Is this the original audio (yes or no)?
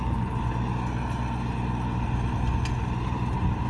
yes